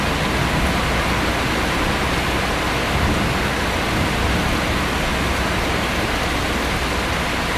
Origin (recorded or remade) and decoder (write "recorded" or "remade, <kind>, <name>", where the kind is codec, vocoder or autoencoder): recorded